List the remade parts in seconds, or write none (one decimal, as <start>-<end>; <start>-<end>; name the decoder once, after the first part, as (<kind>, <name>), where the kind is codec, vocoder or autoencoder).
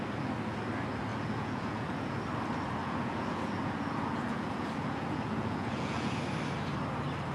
1.1-2.2 (vocoder, Vocos); 2.8-6.2